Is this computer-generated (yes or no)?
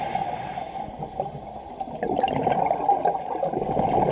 no